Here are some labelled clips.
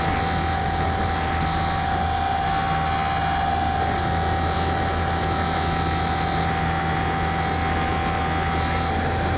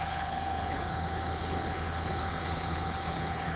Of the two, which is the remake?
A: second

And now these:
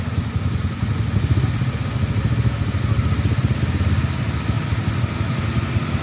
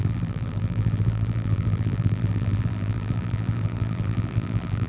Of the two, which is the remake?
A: second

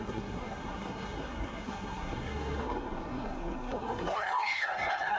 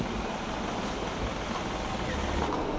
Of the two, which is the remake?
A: first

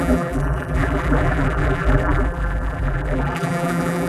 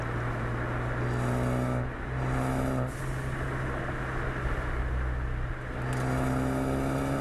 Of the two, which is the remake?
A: first